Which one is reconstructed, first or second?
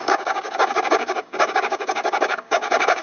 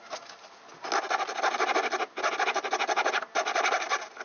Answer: first